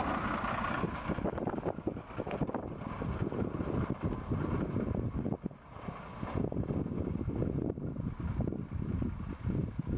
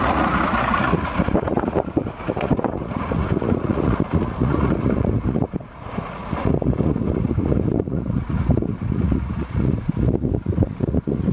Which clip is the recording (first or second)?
first